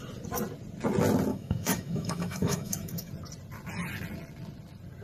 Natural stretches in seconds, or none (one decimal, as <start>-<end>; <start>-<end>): 0.0-1.3; 3.1-5.0

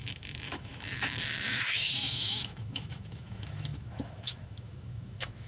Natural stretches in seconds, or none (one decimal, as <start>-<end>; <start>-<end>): none

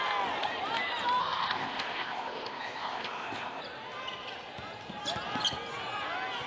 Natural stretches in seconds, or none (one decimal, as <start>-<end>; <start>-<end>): 0.0-1.2; 3.6-6.5

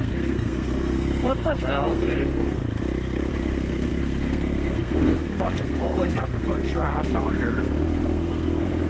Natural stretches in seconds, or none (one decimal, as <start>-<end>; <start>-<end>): 2.6-3.3

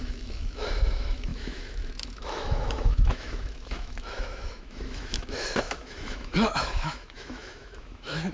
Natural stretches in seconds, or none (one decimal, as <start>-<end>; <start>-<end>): none

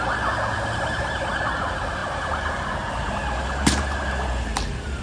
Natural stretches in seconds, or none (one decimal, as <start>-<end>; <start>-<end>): 0.0-5.0

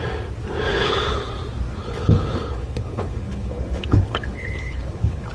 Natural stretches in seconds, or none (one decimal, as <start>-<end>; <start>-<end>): 0.0-0.7; 1.3-1.8